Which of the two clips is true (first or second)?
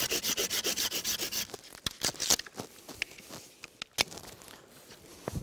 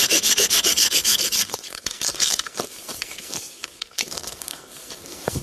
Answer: first